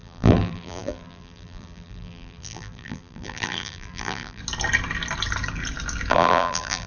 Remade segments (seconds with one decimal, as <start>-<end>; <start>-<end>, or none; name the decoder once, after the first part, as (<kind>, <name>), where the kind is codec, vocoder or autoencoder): 0.0-4.4 (vocoder, BigVGAN v2); 6.1-6.9